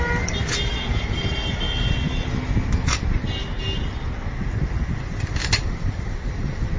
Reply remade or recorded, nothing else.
recorded